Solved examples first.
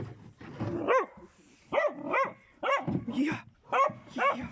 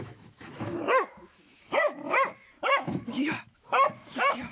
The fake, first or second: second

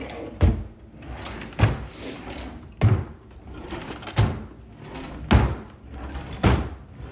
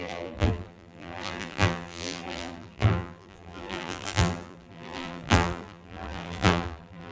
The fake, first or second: second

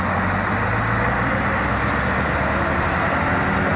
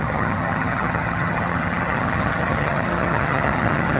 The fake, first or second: second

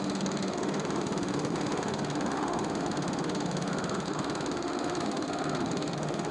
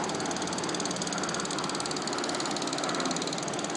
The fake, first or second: first